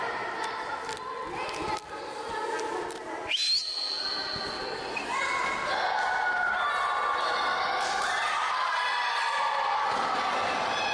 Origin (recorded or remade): recorded